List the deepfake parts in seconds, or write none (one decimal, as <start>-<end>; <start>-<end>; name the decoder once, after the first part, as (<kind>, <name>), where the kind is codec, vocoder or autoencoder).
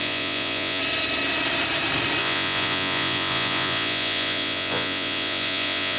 0.0-0.8 (vocoder, Vocos); 2.2-6.0